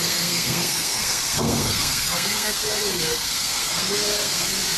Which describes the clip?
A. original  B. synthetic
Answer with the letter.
B